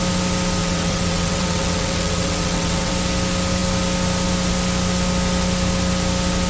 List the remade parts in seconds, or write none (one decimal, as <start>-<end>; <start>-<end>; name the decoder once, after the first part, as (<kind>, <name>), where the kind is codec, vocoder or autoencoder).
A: 0.6-2.9 (vocoder, WaveNeXt)